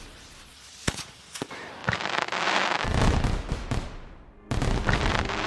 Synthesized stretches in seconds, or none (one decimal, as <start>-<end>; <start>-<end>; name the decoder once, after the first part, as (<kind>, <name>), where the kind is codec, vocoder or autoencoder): none